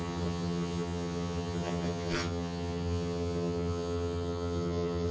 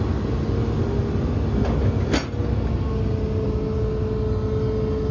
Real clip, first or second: second